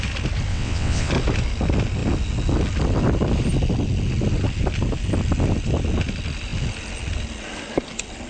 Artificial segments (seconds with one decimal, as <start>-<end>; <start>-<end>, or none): 0.5-1.1